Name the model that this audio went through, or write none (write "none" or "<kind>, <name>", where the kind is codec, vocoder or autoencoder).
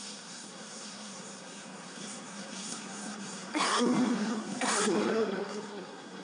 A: codec, SNAC